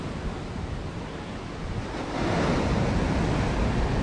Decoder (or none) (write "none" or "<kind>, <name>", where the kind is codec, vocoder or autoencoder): none